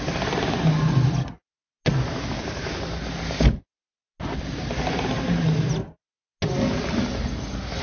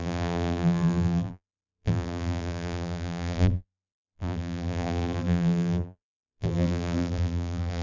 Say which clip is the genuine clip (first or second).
first